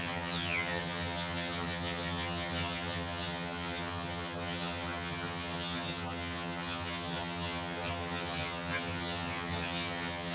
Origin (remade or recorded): remade